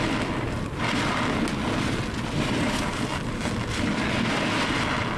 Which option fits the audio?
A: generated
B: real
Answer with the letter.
B